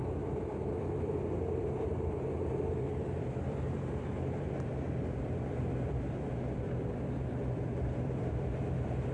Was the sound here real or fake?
fake